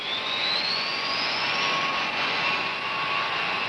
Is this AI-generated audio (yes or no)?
yes